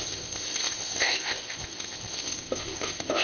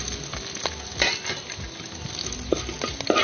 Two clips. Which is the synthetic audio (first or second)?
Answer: first